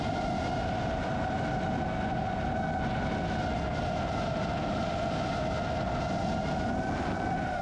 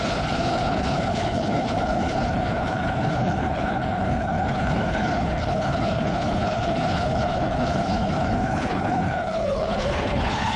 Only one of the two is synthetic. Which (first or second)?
second